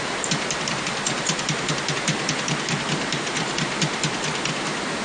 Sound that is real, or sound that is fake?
real